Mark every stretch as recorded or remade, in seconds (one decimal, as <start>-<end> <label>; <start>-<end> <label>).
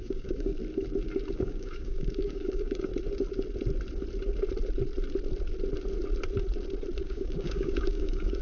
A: 0.0-0.5 remade; 0.5-1.3 recorded; 1.3-2.9 remade; 2.9-7.0 recorded; 7.0-8.4 remade